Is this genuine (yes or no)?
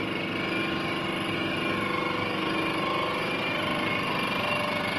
yes